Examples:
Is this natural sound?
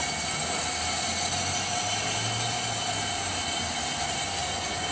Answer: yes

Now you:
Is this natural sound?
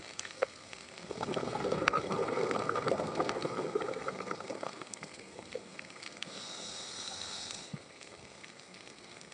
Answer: no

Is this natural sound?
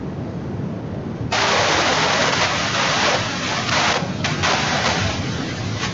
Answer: yes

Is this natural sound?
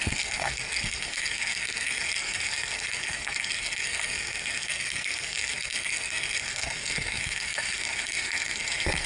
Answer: no